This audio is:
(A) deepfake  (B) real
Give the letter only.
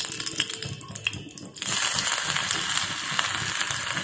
B